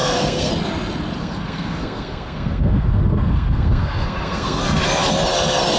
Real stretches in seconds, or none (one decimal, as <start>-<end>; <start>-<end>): 0.5-1.2; 4.6-5.8